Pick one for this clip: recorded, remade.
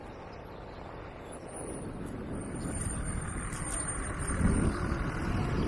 recorded